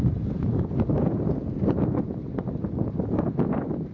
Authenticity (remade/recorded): recorded